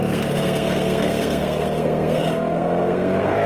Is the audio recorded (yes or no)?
no